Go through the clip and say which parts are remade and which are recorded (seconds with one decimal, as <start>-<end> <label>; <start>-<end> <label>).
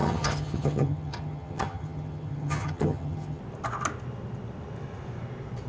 0.0-3.4 remade; 3.4-5.7 recorded